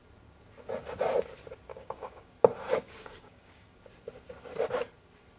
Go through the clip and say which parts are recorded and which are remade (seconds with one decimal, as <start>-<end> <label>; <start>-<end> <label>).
0.0-1.7 recorded; 1.7-2.3 remade; 2.3-2.7 recorded; 2.7-3.8 remade; 3.8-5.4 recorded